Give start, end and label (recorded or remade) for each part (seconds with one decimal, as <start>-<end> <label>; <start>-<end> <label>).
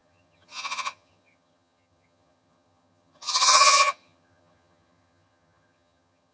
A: 0.0-6.3 remade